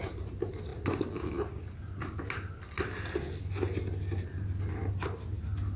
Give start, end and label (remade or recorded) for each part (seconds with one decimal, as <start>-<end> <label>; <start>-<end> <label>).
0.0-5.8 recorded